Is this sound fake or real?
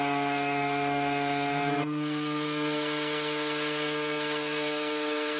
fake